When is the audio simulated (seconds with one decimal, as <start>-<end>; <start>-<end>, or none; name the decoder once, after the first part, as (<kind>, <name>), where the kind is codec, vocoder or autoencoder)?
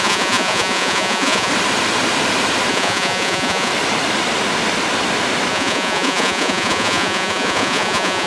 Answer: 0.0-1.5 (vocoder, Vocos); 2.7-3.7; 5.5-8.3